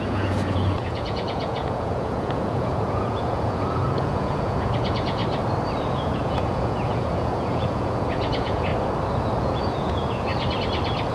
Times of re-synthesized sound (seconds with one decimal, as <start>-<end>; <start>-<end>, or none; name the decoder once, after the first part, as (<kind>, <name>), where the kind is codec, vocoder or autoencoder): 0.0-5.2 (vocoder, Vocos); 5.9-8.7; 9.4-10.3